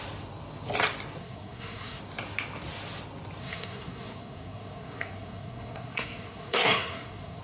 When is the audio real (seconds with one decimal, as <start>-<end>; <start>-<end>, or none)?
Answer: 0.0-1.2; 2.0-3.4